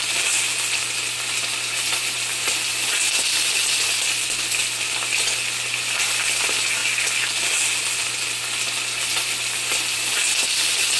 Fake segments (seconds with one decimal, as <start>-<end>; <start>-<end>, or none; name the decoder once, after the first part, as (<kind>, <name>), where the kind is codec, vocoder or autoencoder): none

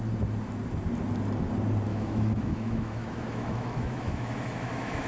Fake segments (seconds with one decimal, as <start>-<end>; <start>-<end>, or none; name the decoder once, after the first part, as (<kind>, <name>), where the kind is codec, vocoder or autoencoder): 1.9-5.1 (autoencoder, DAC-VAE)